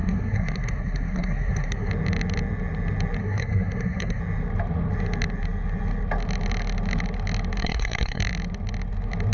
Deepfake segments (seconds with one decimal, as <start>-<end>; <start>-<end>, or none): 0.0-1.9; 3.2-4.2; 7.6-8.2